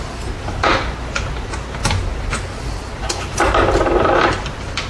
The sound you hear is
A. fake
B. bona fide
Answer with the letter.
B